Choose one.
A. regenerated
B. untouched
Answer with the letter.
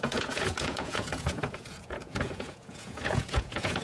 A